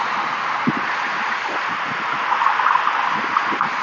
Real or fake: real